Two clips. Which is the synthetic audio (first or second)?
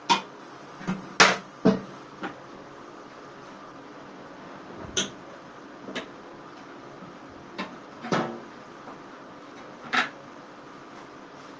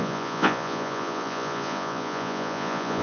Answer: second